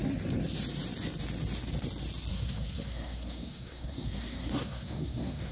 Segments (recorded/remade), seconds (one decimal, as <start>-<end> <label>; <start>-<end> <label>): 0.0-2.3 recorded; 2.3-5.5 remade

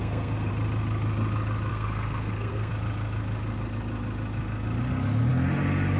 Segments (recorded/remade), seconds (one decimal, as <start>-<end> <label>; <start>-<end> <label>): 0.0-0.5 remade; 0.5-1.7 recorded; 1.7-2.7 remade; 2.7-6.0 recorded

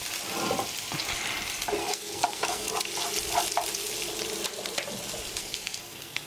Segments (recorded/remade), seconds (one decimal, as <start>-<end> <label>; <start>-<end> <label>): 0.0-1.8 recorded; 1.8-2.7 remade; 2.7-5.4 recorded; 5.4-6.3 remade

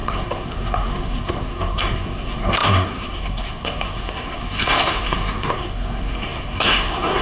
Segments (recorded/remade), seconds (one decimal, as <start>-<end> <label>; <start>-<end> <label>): 0.0-7.2 remade

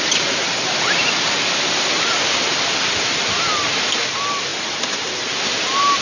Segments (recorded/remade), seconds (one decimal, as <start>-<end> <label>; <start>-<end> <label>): 0.0-6.0 recorded

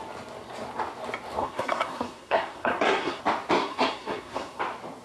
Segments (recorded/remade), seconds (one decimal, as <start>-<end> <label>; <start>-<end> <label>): 0.0-1.4 recorded; 1.4-3.2 remade; 3.2-3.6 recorded; 3.6-4.6 remade; 4.6-5.0 recorded